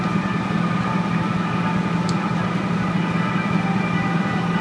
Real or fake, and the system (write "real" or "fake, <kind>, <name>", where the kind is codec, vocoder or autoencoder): real